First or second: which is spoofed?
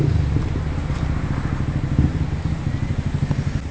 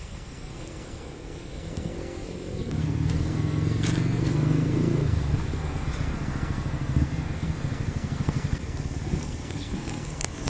second